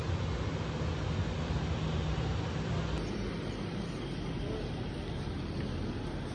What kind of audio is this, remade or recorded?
recorded